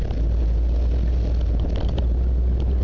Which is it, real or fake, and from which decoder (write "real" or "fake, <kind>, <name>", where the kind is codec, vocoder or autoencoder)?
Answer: real